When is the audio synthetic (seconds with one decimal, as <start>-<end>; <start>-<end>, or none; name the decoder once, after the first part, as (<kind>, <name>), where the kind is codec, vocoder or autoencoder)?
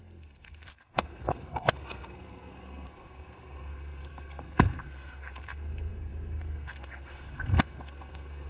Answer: 0.0-8.5 (codec, SNAC)